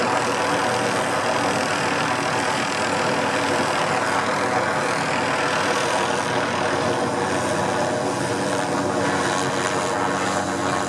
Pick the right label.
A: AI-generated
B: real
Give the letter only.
B